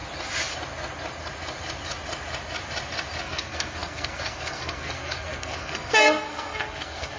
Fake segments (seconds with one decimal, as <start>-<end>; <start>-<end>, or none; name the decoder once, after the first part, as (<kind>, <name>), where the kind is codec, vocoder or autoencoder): 3.2-7.2 (codec, SNAC)